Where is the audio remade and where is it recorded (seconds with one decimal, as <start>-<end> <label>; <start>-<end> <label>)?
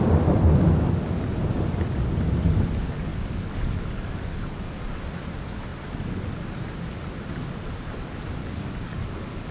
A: 0.0-3.1 recorded; 3.1-4.8 remade; 4.8-8.4 recorded; 8.4-9.5 remade